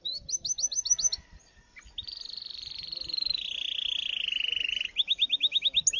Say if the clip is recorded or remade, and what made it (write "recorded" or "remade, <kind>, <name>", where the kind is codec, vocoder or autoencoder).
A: recorded